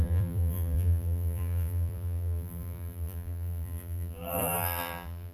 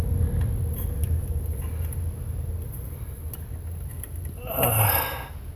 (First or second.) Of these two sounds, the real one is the second